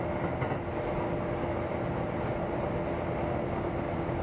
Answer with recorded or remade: recorded